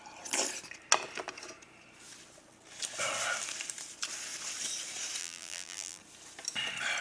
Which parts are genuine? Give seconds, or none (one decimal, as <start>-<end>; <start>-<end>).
0.0-5.2; 6.0-7.0

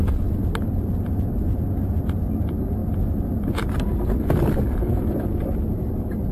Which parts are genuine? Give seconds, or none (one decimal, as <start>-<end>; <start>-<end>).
0.0-2.8; 3.5-3.9; 5.0-6.3

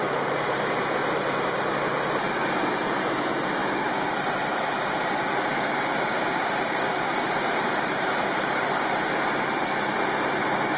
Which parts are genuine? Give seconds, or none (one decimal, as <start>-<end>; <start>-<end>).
0.0-6.1; 8.7-10.8

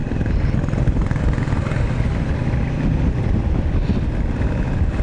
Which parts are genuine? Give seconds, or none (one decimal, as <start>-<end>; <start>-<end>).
1.2-5.0

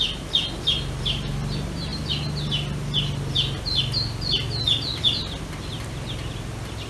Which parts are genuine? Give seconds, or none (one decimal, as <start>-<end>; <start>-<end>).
0.0-6.9

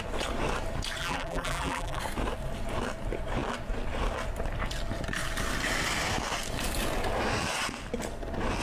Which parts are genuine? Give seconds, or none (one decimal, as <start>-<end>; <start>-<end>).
0.0-1.0; 2.0-8.6